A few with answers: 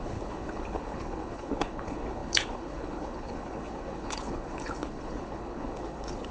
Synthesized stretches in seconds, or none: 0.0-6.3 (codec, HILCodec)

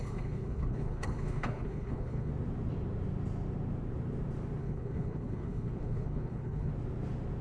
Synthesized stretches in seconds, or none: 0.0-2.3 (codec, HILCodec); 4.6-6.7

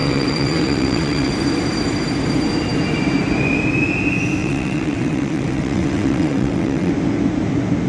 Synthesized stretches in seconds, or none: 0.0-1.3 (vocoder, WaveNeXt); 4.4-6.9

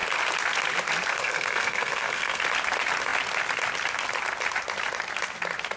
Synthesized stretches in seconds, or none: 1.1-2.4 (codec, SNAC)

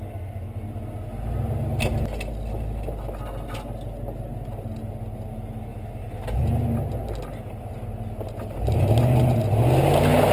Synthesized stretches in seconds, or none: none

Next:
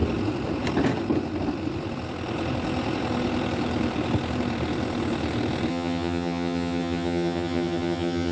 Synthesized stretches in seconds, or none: 5.7-8.3 (vocoder, HiFi-GAN)

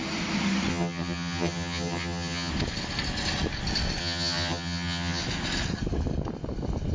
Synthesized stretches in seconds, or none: 0.7-2.5 (vocoder, HiFi-GAN); 4.0-5.2

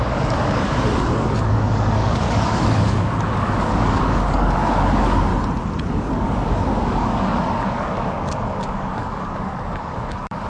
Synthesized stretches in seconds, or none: 0.0-5.3 (codec, DAC); 5.9-10.5